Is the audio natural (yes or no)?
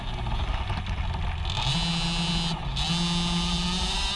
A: yes